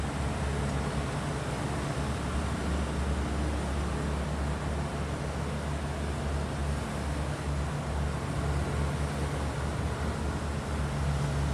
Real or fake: real